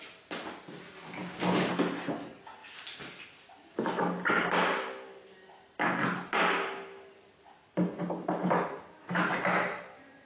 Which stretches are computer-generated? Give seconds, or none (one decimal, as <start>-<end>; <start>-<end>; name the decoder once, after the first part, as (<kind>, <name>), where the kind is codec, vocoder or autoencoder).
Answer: 1.2-1.7 (codec, DAC)